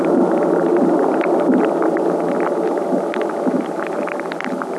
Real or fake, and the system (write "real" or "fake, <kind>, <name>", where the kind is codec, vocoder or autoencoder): real